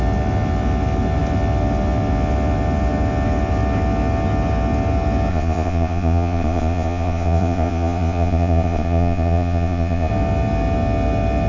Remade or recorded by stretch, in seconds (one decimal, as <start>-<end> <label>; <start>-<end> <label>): 0.0-5.3 recorded; 5.3-10.1 remade; 10.1-11.5 recorded